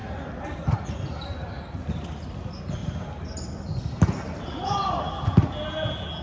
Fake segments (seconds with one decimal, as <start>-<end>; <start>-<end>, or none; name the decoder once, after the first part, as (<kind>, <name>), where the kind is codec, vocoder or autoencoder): none